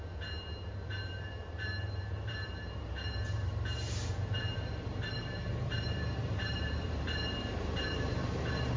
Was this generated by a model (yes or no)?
yes